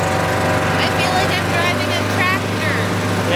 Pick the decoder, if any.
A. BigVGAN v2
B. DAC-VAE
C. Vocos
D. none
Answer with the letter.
D